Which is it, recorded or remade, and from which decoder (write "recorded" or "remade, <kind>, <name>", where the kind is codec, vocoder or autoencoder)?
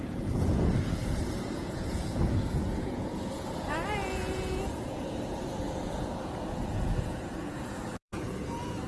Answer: remade, vocoder, Vocos